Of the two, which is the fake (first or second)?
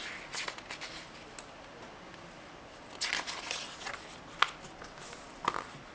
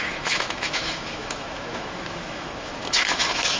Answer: second